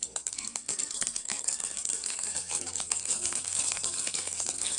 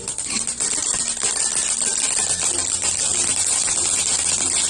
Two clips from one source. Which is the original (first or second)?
second